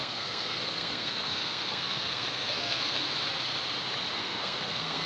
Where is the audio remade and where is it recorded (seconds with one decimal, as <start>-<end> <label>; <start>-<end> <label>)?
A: 0.0-3.1 remade; 3.1-4.2 recorded; 4.2-5.1 remade